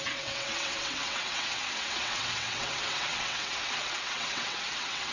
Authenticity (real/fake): fake